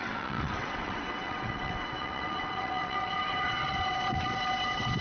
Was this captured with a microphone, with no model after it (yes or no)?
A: no